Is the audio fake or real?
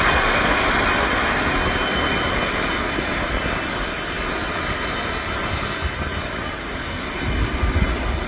real